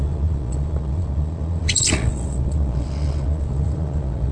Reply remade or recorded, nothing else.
remade